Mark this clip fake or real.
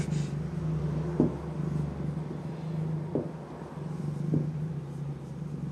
real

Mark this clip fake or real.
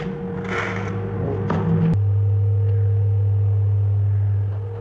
real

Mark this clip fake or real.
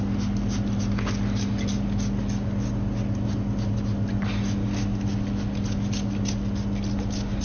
real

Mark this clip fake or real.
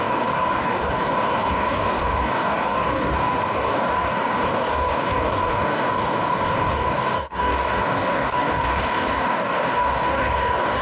fake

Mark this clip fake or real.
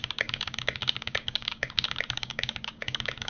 fake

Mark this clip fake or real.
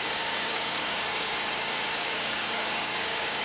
fake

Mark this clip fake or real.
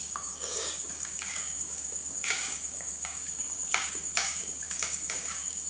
fake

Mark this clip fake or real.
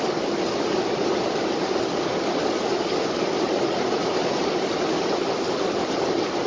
real